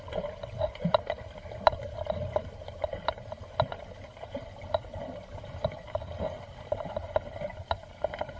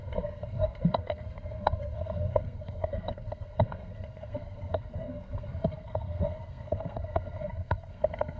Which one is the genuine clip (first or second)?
first